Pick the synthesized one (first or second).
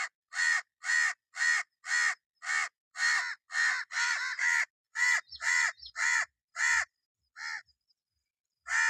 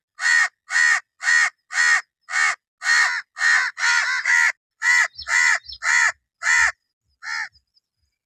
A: first